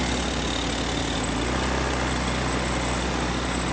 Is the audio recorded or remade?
recorded